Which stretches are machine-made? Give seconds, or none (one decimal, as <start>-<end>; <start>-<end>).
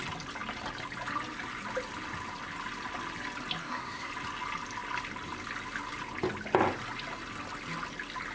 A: 3.6-4.1